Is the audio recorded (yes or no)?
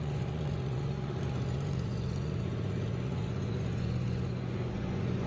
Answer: no